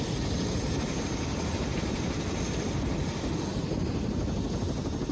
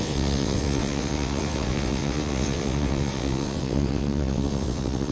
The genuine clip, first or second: first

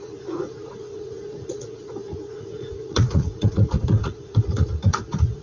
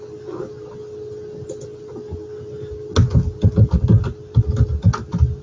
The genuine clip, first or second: second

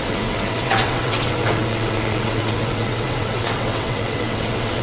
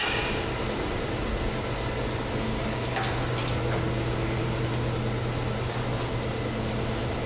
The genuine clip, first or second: second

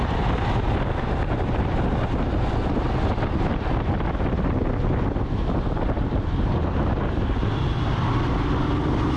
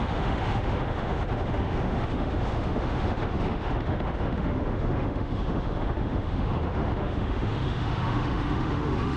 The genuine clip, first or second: first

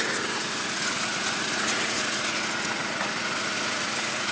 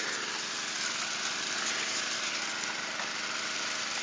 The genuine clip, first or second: second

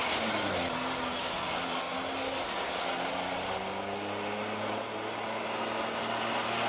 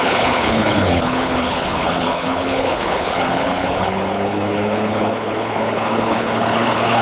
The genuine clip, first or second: first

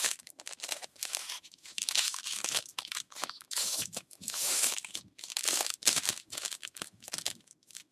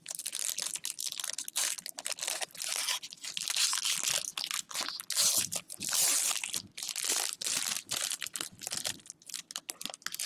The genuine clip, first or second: second